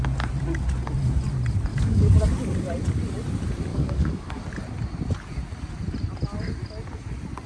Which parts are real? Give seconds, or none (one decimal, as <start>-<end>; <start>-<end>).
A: 0.0-1.7; 2.3-3.7; 4.4-7.5

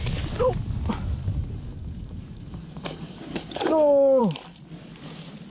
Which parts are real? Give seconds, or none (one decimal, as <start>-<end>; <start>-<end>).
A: 0.0-1.2; 4.2-5.5

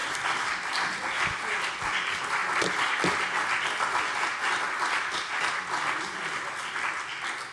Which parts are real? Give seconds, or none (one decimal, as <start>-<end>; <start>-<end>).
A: 0.0-7.5

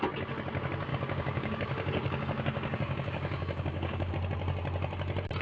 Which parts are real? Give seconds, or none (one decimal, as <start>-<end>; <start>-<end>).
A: 0.0-0.9; 4.1-5.4